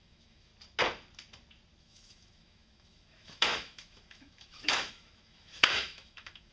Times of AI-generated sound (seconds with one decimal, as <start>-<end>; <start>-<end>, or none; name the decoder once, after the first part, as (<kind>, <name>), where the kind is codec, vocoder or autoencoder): 0.0-0.5 (autoencoder, DAC-VAE); 1.8-6.5